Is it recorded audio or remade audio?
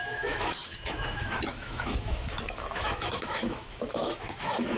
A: remade